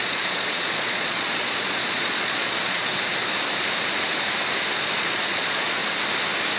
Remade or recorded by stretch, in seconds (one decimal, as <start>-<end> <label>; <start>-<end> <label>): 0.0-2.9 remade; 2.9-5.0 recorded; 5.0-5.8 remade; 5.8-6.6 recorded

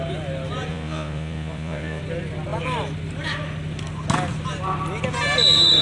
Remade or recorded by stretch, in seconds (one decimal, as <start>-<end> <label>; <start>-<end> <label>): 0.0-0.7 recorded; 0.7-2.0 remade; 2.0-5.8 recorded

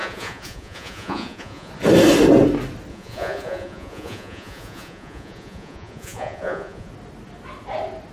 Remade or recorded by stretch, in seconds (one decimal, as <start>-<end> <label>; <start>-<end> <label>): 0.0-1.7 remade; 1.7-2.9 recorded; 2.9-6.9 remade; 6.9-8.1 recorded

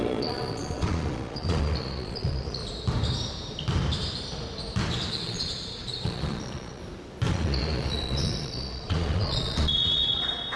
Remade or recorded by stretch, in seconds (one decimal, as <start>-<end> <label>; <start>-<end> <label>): 0.0-2.6 remade; 2.6-5.1 recorded; 5.1-6.8 remade; 6.8-7.3 recorded; 7.3-10.6 remade

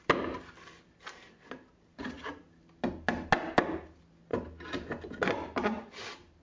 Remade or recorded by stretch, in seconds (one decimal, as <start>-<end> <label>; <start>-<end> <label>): 0.0-6.4 recorded

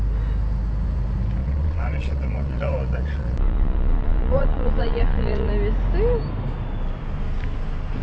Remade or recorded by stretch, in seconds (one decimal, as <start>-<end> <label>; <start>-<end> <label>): 0.0-1.4 recorded; 1.4-5.5 remade; 5.5-8.0 recorded

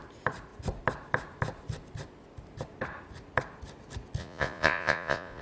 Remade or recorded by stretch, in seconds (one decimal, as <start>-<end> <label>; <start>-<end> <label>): 0.0-4.2 recorded; 4.2-5.4 remade